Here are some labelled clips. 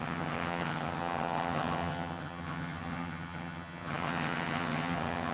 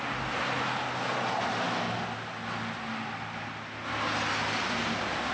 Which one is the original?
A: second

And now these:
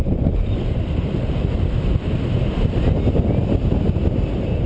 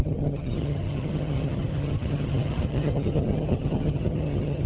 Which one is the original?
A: first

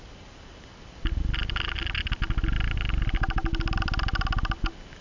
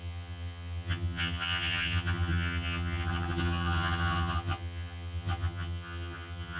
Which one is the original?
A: first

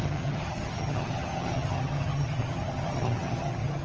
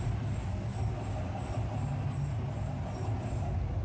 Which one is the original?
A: second